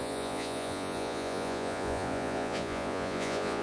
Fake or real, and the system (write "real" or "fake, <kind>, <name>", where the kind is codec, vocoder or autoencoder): fake, vocoder, Vocos